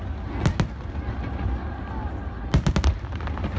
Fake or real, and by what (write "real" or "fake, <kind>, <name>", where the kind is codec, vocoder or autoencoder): real